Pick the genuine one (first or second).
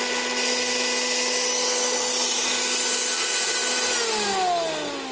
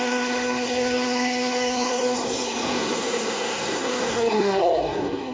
first